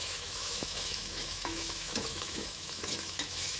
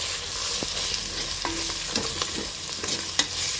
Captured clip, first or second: second